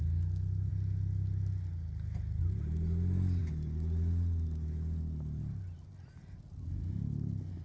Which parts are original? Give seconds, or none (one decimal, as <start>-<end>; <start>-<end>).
0.0-7.6

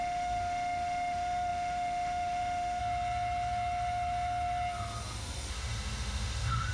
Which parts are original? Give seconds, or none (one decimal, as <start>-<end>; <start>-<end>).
2.8-5.5

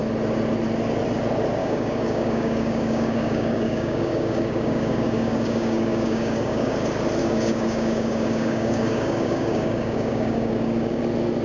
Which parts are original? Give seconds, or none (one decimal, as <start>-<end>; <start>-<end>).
0.0-1.6; 6.7-7.2; 11.0-11.4